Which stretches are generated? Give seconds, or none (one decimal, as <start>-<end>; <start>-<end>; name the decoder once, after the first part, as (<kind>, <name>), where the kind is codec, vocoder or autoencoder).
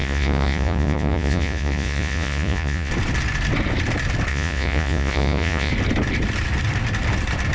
0.0-2.9 (vocoder, Vocos); 4.3-5.7